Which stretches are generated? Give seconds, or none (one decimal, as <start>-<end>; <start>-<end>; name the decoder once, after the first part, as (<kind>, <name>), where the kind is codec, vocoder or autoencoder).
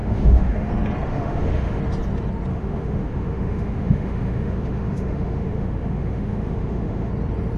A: 0.0-0.7 (autoencoder, DAC-VAE); 1.1-1.8; 2.5-7.1